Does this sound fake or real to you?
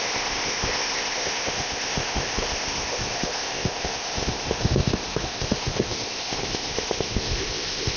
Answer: fake